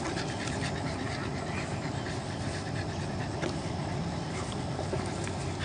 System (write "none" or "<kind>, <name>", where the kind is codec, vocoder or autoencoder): none